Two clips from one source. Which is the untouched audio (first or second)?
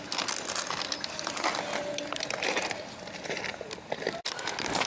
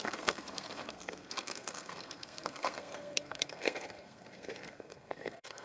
first